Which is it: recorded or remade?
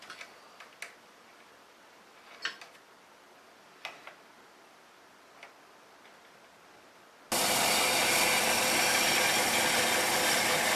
recorded